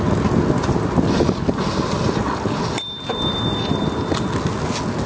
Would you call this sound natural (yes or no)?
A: yes